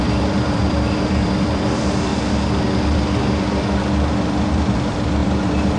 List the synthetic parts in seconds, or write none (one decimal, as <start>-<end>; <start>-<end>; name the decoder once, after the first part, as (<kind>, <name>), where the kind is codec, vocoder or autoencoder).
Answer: 0.0-2.1 (vocoder, BigVGAN v2); 4.1-5.8